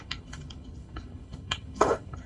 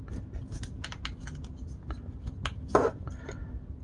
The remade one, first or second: first